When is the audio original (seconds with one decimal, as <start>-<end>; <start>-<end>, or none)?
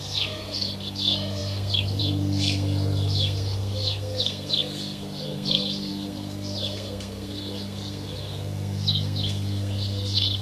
none